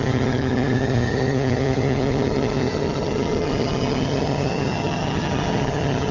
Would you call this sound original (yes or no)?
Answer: no